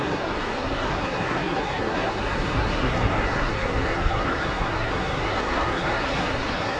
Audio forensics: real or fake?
fake